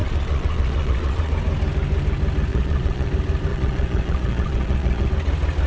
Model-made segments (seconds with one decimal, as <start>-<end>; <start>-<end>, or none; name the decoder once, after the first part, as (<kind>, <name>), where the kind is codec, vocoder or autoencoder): 0.0-1.3 (vocoder, Vocos); 2.5-3.1; 3.5-5.1